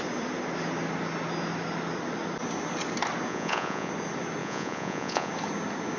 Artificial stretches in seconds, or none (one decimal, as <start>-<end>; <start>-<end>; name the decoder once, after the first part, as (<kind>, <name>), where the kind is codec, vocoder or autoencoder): 3.3-3.9 (vocoder, Vocos); 4.4-5.3